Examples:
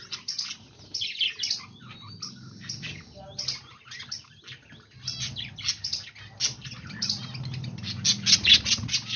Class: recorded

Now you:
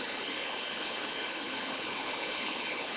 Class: remade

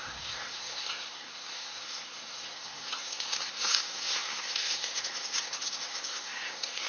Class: remade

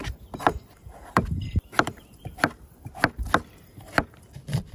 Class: remade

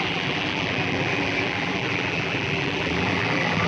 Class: remade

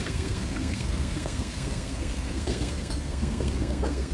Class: remade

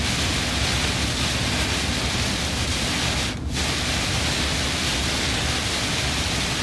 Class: recorded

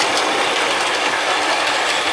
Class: recorded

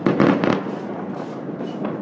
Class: recorded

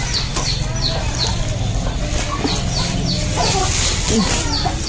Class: recorded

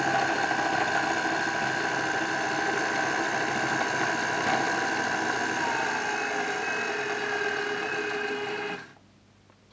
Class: recorded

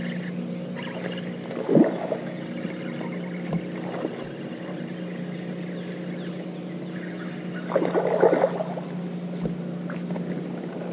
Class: recorded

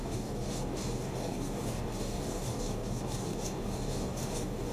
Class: remade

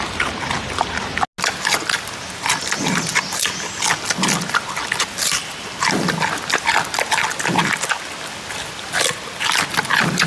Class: recorded